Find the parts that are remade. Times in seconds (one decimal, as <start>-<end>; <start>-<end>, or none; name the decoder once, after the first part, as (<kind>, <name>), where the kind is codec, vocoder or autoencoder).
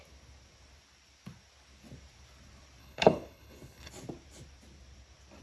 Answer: 2.8-3.9 (codec, HILCodec)